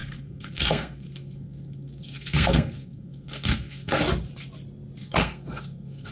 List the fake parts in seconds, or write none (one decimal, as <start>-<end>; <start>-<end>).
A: 0.0-4.0; 5.0-6.1